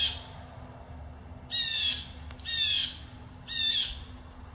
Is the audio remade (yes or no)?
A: no